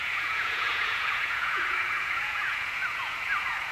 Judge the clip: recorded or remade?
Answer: remade